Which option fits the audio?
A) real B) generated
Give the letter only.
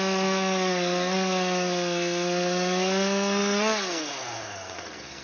B